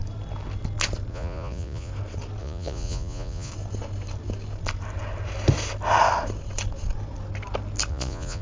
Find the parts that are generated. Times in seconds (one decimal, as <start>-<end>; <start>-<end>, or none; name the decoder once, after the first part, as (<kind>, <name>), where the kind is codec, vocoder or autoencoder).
1.1-1.9 (vocoder, Vocos); 2.4-3.5; 7.9-8.4